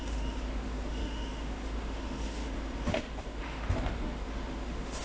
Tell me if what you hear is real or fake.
fake